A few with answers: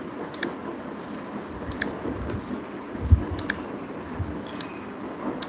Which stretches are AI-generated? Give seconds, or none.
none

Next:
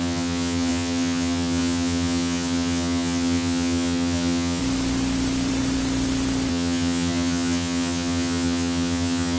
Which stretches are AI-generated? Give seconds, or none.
0.0-4.6; 6.5-9.4

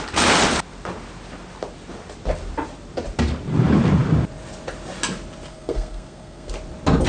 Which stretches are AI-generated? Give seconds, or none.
5.5-6.5

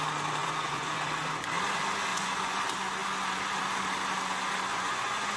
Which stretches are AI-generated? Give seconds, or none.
0.4-1.1; 2.1-2.6; 4.7-5.4

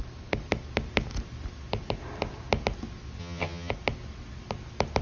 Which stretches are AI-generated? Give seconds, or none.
3.2-3.7